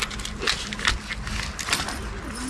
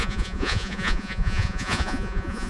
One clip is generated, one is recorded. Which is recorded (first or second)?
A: first